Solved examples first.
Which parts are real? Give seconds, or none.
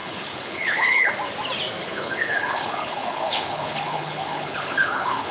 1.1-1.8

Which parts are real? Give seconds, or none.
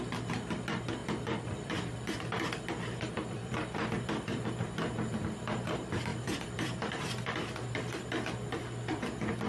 0.0-1.0; 4.5-6.1; 9.0-9.5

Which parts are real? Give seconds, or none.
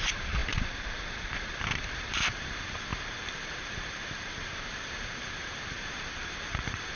0.4-1.8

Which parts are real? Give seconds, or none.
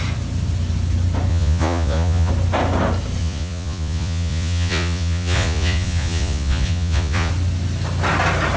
0.0-1.3; 2.3-3.2; 7.3-8.6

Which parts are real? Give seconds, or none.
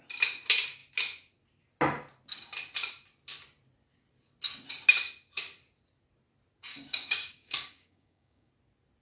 0.0-6.7; 8.5-9.0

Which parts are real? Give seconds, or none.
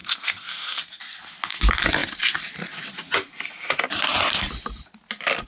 1.0-5.5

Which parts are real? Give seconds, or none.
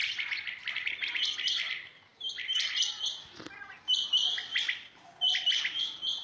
0.0-6.2